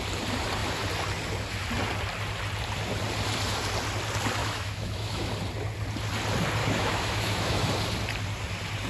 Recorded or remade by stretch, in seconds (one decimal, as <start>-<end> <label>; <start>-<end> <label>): 0.0-4.4 recorded; 4.4-5.3 remade; 5.3-6.6 recorded; 6.6-7.7 remade; 7.7-8.9 recorded